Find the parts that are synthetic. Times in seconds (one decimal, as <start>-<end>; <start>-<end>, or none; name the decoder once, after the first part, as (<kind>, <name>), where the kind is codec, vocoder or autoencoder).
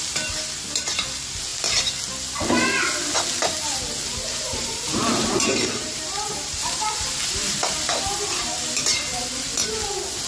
4.3-9.2 (vocoder, BigVGAN v2)